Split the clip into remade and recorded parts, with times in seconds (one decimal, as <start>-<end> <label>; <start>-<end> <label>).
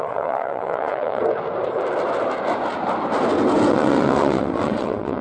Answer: 0.0-1.2 remade; 1.2-3.7 recorded; 3.7-5.2 remade